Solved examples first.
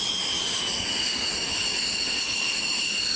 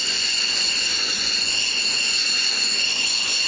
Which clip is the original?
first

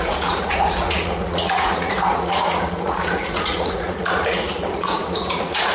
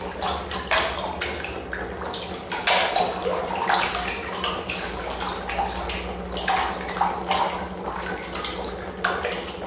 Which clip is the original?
second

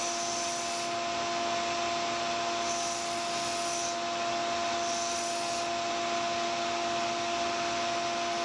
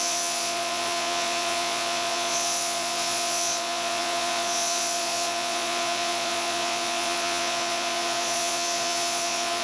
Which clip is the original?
first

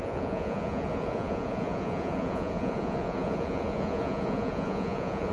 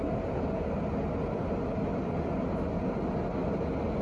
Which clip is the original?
second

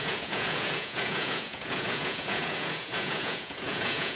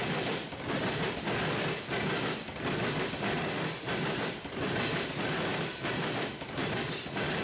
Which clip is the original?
second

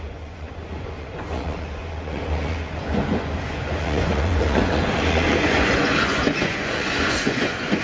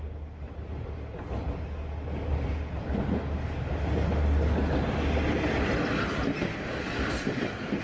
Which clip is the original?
second